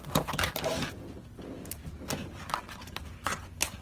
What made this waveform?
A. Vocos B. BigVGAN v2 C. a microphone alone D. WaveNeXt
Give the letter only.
C